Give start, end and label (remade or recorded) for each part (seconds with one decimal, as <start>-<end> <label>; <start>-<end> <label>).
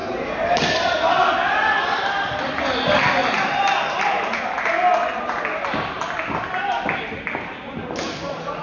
0.0-8.6 recorded